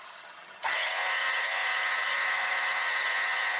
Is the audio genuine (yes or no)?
no